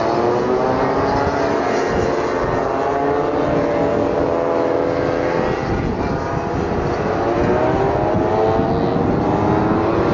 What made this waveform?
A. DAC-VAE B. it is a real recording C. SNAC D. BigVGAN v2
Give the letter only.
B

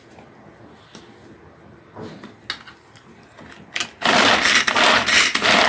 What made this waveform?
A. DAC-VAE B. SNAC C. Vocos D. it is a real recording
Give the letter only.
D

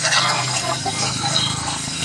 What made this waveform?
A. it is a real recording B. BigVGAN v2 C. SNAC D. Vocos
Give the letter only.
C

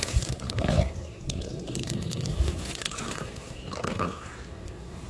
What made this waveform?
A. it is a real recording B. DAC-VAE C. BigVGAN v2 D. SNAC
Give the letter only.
D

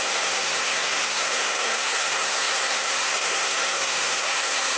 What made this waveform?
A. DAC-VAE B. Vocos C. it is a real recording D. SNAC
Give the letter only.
D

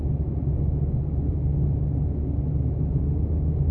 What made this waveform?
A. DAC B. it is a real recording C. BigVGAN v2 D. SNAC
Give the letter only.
B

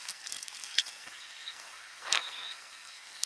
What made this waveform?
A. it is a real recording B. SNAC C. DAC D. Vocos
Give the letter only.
B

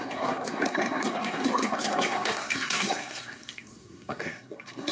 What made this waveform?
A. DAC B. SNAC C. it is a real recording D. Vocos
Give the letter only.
B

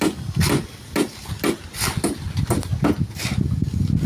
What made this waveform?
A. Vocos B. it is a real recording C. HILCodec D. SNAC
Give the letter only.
B